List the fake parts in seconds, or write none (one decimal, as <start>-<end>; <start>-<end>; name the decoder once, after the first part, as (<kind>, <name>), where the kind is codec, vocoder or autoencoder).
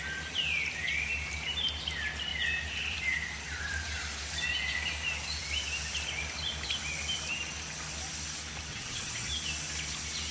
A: 8.7-9.3 (vocoder, HiFi-GAN)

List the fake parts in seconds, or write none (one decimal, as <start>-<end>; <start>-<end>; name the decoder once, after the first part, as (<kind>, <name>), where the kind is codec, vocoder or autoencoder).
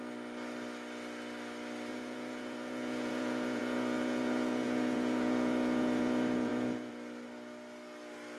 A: 1.9-6.9 (vocoder, Vocos)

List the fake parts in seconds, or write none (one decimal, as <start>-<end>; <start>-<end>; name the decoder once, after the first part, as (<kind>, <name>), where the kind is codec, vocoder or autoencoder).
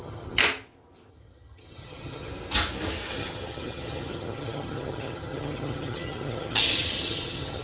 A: 0.0-0.4 (vocoder, HiFi-GAN); 1.1-2.3; 3.1-7.6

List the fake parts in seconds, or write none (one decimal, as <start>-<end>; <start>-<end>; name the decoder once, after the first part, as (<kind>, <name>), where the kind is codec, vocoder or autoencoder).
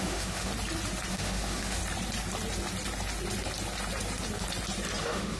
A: 0.0-0.5 (autoencoder, DAC-VAE); 1.1-1.8; 5.0-5.4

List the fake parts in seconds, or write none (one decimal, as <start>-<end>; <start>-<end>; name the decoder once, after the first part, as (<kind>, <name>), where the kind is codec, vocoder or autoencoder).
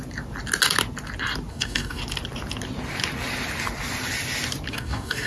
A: 1.5-2.0 (codec, DAC); 4.7-5.3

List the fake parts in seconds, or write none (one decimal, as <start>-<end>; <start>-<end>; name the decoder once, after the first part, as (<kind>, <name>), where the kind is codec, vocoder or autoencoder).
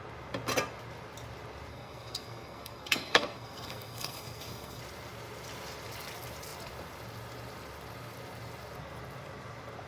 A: 1.7-4.8 (codec, SNAC)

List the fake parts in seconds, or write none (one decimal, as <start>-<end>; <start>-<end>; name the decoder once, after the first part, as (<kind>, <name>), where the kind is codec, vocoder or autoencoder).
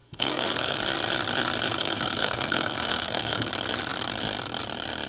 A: 0.0-0.8 (codec, SNAC); 1.8-3.5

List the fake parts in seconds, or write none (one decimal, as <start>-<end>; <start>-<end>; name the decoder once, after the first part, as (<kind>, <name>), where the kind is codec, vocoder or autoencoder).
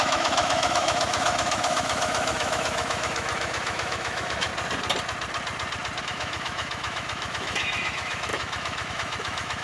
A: 0.0-4.5 (autoencoder, DAC-VAE); 6.0-9.6